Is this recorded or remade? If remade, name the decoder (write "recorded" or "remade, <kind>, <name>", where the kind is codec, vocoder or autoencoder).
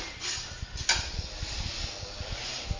recorded